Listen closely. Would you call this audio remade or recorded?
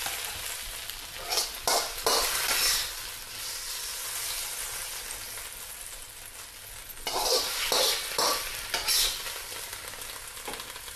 recorded